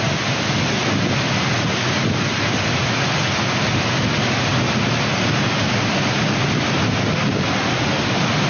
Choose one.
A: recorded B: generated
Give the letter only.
A